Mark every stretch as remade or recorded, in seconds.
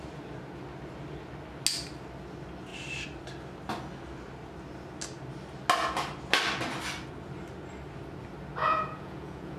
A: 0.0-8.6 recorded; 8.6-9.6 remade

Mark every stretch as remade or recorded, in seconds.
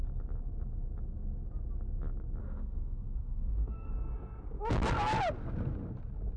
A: 0.0-2.4 recorded; 2.4-3.9 remade; 3.9-6.4 recorded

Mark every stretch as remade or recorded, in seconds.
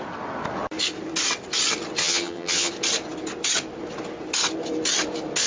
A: 0.0-2.0 recorded; 2.0-2.7 remade; 2.7-5.5 recorded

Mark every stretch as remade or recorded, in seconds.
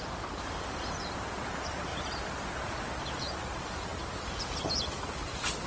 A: 0.0-5.7 recorded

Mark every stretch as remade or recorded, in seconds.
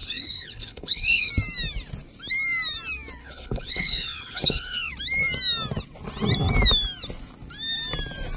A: 0.0-1.3 remade; 1.3-3.2 recorded; 3.2-4.9 remade; 4.9-8.4 recorded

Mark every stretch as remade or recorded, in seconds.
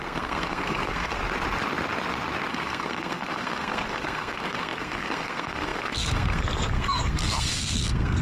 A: 0.0-1.2 remade; 1.2-2.5 recorded; 2.5-8.2 remade